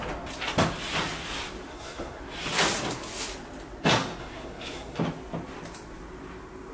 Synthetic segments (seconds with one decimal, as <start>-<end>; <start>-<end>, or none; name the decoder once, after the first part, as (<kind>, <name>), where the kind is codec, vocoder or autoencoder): 1.7-2.2 (codec, SNAC); 4.2-5.0